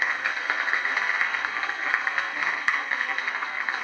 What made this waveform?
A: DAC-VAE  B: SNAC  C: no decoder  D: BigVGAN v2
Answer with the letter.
B